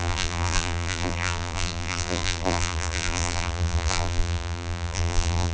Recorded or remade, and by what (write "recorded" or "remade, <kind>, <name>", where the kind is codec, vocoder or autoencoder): remade, vocoder, BigVGAN v2